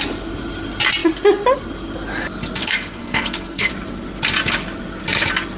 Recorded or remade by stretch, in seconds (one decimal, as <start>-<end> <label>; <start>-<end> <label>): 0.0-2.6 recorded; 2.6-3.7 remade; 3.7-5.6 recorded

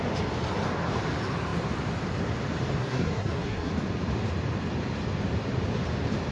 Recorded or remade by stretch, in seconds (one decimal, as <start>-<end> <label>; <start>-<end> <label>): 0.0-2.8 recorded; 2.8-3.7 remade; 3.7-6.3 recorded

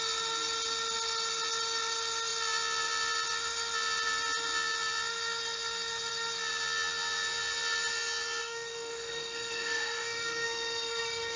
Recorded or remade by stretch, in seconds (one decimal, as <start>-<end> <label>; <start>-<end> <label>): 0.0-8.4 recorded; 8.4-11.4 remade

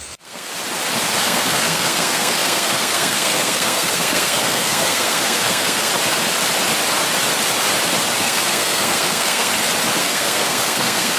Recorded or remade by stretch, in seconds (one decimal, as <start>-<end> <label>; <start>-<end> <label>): 0.0-0.5 remade; 0.5-1.2 recorded; 1.2-5.9 remade; 5.9-8.2 recorded; 8.2-9.5 remade; 9.5-10.0 recorded; 10.0-11.2 remade

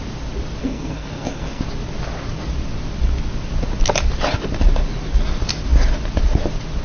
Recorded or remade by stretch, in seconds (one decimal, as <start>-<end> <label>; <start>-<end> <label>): 0.0-0.6 recorded; 0.6-1.6 remade; 1.6-6.8 recorded

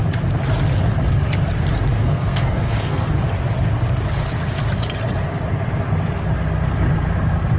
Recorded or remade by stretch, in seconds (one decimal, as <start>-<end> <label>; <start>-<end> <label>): 0.0-1.9 recorded; 1.9-3.1 remade; 3.1-7.6 recorded

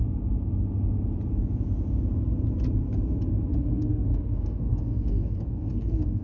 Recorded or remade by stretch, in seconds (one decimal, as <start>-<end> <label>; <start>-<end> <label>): 0.0-3.6 recorded; 3.6-6.2 remade